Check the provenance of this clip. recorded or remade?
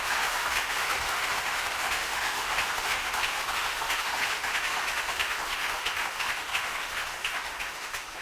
remade